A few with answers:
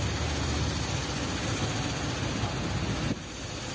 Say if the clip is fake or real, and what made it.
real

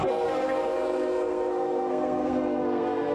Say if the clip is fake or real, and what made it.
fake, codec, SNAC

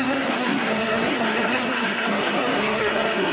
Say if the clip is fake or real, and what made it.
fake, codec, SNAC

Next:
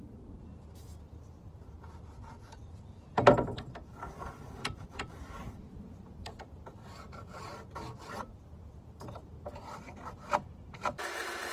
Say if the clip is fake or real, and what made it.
real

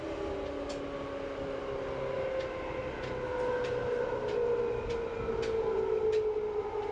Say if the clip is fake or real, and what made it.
real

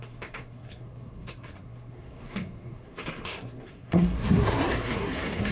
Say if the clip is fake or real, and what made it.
fake, codec, SNAC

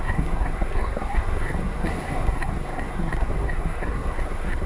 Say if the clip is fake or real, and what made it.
fake, codec, SNAC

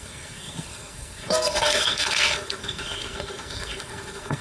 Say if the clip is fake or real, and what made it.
fake, codec, SNAC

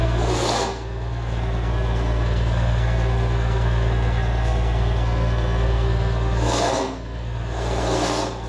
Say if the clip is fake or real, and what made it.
fake, codec, SNAC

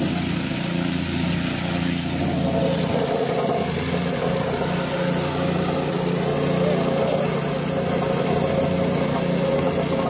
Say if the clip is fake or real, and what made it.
real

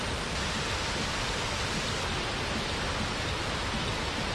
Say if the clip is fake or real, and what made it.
real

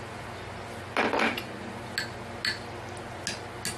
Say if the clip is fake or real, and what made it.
real